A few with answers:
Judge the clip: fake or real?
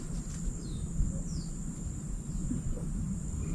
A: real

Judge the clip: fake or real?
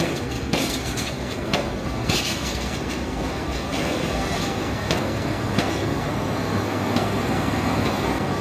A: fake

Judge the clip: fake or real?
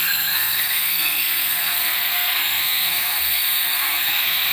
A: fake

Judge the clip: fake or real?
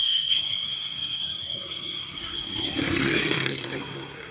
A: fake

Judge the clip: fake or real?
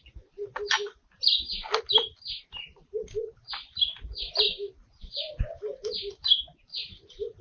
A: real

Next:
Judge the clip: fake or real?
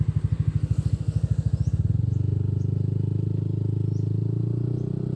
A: real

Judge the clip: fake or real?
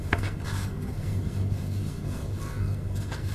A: fake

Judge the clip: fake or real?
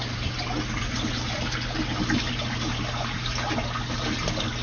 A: real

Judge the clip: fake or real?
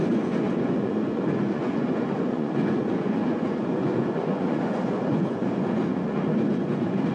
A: fake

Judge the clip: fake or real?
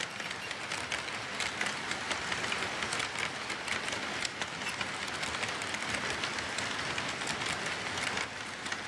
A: real